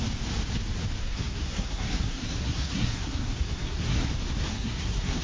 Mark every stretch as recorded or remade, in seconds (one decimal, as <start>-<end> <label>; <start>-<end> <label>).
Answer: 0.0-1.0 recorded; 1.0-4.1 remade; 4.1-4.5 recorded; 4.5-5.2 remade